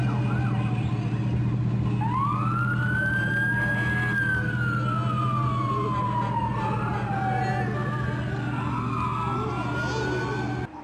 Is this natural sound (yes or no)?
yes